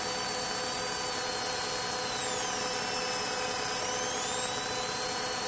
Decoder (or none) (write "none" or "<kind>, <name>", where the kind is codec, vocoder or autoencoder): none